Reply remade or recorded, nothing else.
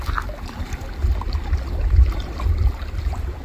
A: recorded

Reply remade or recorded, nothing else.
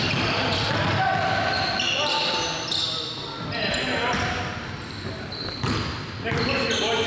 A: recorded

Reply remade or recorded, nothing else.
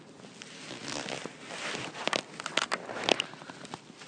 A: recorded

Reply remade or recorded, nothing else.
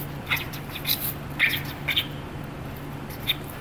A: remade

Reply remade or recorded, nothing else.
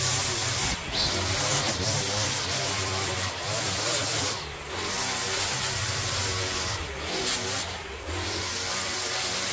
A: remade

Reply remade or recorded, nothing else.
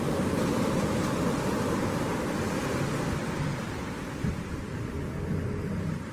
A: remade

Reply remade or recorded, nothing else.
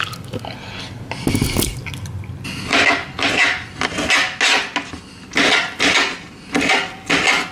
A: recorded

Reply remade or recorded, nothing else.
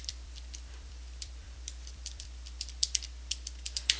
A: remade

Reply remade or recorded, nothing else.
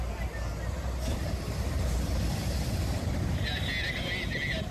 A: recorded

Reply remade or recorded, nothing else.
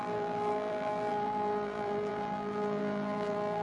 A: remade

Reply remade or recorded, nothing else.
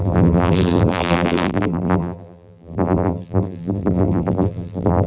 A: remade